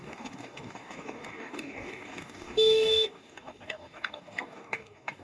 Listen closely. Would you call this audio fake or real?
fake